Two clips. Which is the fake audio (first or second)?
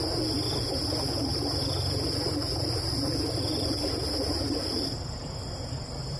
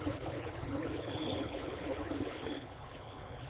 second